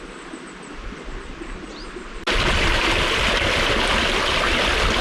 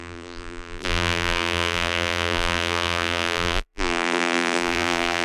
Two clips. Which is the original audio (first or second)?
first